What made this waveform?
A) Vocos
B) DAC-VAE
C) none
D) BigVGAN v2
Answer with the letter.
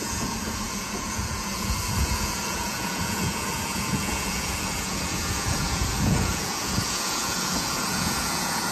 A